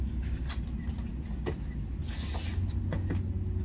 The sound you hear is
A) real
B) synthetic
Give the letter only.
A